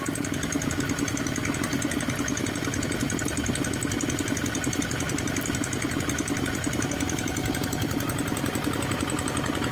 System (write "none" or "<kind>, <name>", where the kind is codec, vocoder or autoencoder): none